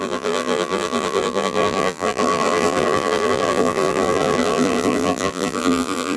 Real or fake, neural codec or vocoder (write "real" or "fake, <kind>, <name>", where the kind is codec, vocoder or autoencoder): fake, vocoder, BigVGAN v2